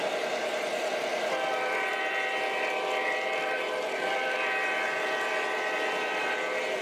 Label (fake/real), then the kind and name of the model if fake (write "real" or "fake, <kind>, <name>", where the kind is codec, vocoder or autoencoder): fake, vocoder, BigVGAN v2